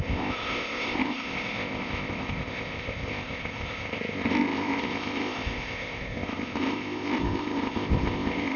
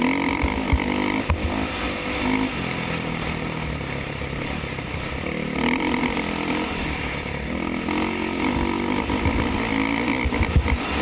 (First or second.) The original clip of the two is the second